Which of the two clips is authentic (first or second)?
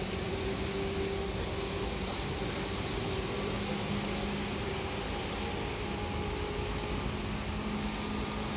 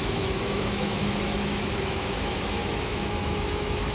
first